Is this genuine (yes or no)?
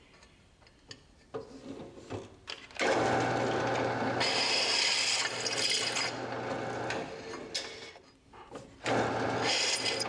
yes